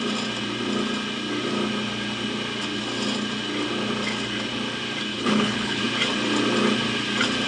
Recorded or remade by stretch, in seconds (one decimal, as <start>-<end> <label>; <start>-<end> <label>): 0.0-5.1 recorded; 5.1-5.8 remade; 5.8-7.5 recorded